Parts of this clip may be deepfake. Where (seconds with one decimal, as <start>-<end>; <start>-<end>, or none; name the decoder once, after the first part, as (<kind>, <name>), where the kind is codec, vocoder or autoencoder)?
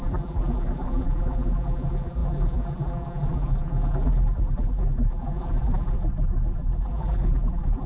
0.0-7.9 (vocoder, BigVGAN v2)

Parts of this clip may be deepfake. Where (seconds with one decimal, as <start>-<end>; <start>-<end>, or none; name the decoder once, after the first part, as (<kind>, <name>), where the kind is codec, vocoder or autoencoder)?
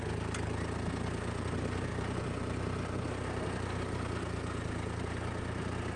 none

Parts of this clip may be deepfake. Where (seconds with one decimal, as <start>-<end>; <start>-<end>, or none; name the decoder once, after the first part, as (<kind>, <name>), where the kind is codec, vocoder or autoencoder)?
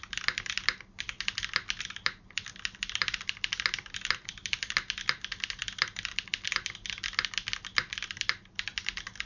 none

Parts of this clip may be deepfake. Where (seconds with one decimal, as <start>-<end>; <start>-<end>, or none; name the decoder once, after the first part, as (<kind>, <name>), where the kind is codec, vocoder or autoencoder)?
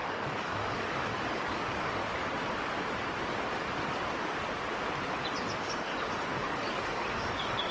0.0-2.0 (codec, DAC); 5.6-7.7